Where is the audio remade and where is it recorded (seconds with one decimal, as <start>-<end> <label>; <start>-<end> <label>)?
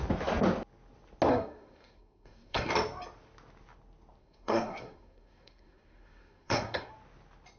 0.0-1.3 recorded; 1.3-2.7 remade; 2.7-4.2 recorded; 4.2-6.9 remade; 6.9-7.6 recorded